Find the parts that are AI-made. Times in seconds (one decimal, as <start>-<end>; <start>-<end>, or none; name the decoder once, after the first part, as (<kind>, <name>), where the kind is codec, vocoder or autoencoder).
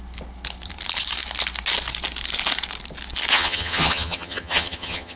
3.3-5.2 (vocoder, HiFi-GAN)